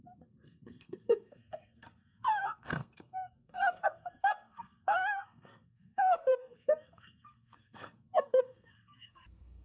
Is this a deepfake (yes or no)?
yes